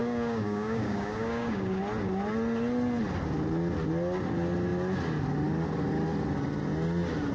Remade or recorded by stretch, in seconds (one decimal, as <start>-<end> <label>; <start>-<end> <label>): 0.0-1.8 remade; 1.8-7.3 recorded